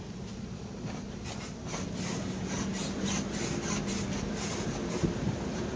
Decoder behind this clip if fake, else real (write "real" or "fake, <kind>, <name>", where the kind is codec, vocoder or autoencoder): real